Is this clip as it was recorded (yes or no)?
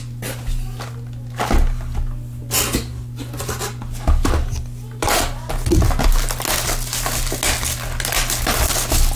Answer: yes